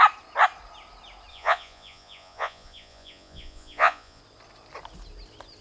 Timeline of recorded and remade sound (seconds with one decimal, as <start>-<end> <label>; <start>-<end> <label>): 0.0-1.3 recorded; 1.3-4.2 remade; 4.2-5.6 recorded